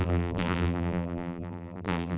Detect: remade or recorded remade